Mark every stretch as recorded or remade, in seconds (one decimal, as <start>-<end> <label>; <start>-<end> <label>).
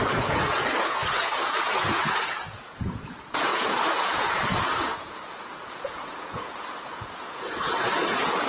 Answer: 0.0-8.5 remade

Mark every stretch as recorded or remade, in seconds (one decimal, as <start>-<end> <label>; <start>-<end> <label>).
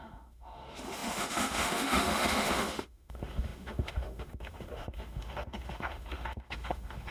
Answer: 0.0-7.1 remade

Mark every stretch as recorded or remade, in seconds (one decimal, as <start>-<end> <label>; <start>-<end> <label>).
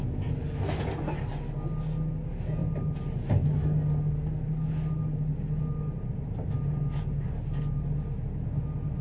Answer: 0.0-9.0 recorded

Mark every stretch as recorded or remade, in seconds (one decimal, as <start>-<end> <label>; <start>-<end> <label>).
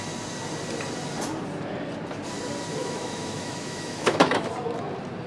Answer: 0.0-2.8 recorded; 2.8-4.5 remade; 4.5-5.3 recorded